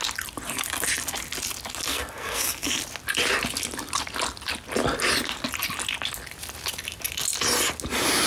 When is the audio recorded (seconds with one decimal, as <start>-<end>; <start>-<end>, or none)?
0.0-1.9; 2.8-8.3